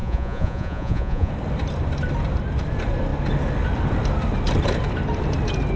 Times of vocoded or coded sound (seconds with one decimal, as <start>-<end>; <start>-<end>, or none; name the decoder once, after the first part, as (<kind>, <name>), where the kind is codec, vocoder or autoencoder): 0.0-1.3 (vocoder, Vocos)